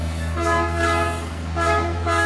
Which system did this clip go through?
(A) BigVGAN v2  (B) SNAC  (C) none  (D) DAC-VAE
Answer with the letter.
B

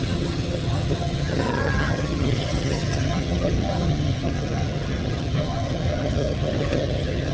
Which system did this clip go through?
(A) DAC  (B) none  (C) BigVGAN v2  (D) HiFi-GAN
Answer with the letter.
D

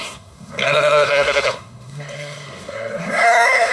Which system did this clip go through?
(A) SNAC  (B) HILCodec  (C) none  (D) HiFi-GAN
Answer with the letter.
A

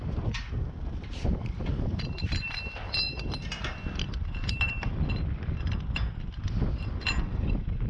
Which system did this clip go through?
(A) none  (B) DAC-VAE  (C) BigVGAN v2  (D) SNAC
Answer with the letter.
C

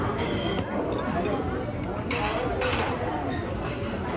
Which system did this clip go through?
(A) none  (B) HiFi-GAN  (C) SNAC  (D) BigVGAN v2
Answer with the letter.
A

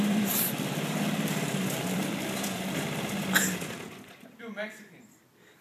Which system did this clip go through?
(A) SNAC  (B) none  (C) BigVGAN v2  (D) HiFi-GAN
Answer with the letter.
C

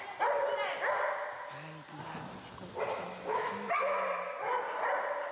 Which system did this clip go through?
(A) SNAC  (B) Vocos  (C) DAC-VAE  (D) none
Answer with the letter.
D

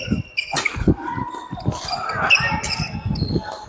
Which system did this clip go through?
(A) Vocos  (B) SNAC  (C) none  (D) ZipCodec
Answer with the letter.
C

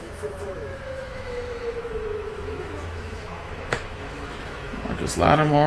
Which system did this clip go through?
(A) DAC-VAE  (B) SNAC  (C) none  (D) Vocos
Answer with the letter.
A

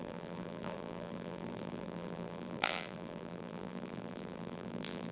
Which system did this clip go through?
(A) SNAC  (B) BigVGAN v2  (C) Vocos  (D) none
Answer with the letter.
B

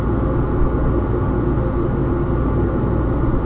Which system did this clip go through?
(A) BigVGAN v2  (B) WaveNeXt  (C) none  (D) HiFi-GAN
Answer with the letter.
C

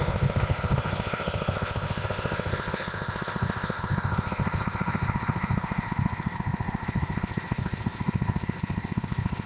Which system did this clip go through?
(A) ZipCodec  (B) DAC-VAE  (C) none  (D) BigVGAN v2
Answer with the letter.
A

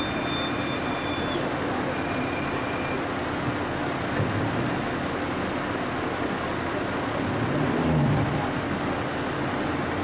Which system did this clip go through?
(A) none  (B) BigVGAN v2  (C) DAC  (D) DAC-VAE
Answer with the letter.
A